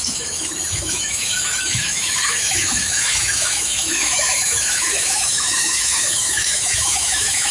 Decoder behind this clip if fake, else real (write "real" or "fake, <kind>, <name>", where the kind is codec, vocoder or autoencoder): fake, autoencoder, DAC-VAE